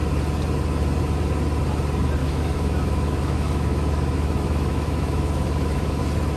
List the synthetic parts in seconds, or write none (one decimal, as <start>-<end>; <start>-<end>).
2.2-6.0